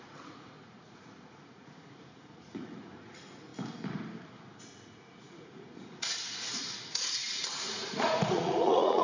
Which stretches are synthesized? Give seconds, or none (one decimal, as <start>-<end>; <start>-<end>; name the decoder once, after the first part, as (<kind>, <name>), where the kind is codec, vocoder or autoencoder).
0.0-3.5 (vocoder, Vocos); 4.6-9.0